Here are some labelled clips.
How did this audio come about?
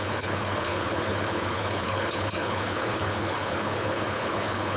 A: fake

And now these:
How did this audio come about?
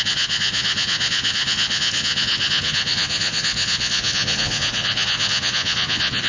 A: fake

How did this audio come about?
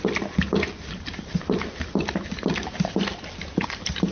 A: real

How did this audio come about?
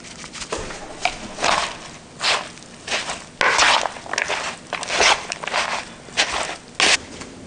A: real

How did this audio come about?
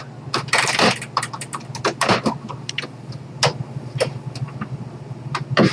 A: real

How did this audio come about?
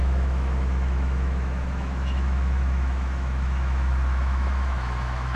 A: fake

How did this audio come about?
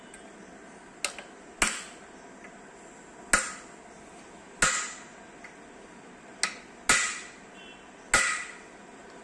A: real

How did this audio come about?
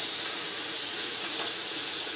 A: fake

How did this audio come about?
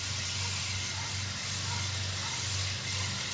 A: real